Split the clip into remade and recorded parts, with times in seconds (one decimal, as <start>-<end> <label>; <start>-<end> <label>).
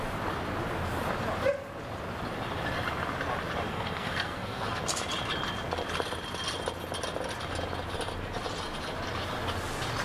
0.0-3.7 recorded; 3.7-4.8 remade; 4.8-10.0 recorded